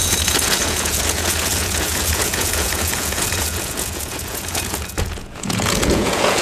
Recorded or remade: remade